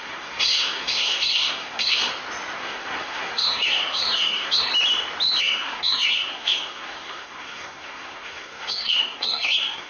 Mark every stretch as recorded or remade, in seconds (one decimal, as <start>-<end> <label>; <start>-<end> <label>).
0.0-2.1 remade; 2.1-2.6 recorded; 2.6-4.7 remade; 4.7-5.4 recorded; 5.4-9.9 remade